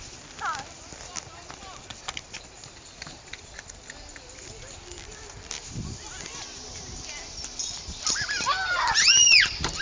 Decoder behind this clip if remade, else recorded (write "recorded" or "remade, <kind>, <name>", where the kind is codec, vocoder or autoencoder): recorded